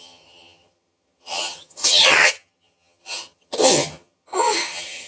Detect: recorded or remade remade